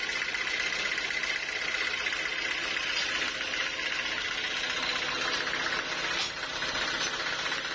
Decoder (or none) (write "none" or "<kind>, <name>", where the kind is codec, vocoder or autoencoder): none